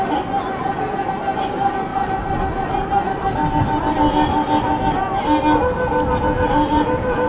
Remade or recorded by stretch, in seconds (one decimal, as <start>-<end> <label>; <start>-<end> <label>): 0.0-0.6 recorded; 0.6-1.1 remade; 1.1-6.1 recorded; 6.1-7.3 remade